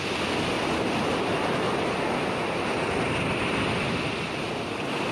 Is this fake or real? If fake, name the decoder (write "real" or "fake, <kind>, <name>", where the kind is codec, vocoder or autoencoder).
real